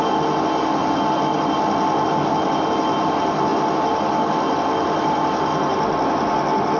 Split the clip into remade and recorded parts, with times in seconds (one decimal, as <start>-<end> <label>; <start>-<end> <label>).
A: 0.0-6.8 recorded